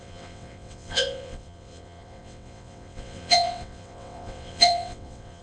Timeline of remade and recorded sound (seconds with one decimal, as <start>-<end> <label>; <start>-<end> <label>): 0.0-5.4 remade